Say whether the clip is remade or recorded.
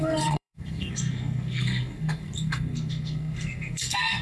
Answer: remade